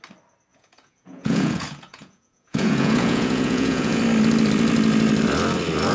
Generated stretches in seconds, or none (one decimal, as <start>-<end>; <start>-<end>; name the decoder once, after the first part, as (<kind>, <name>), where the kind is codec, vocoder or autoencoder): 0.5-4.0 (vocoder, Vocos)